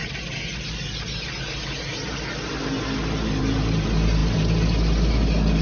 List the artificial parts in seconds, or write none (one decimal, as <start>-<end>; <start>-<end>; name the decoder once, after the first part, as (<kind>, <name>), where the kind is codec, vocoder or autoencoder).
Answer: none